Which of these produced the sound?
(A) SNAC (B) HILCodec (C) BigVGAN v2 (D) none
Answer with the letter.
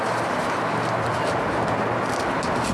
D